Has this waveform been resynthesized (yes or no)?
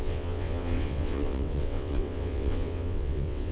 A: yes